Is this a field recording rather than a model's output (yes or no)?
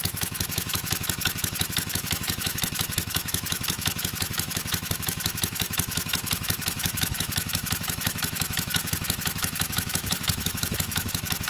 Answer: no